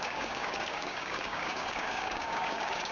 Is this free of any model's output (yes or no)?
no